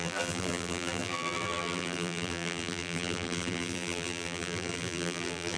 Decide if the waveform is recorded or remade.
remade